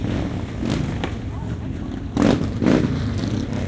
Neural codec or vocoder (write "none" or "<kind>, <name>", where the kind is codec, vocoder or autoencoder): none